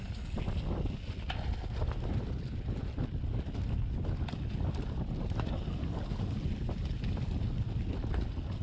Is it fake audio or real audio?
real